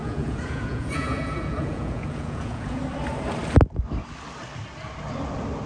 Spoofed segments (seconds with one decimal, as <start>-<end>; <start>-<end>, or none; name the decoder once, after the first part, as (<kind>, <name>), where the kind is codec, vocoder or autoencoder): 0.0-2.8 (vocoder, Vocos)